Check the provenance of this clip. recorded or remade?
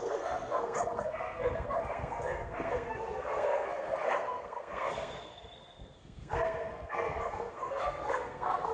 remade